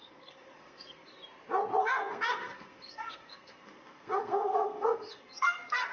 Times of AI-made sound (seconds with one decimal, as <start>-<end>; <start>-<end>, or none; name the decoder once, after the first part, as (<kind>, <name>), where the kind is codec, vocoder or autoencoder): 0.0-1.2 (codec, SNAC); 1.8-5.9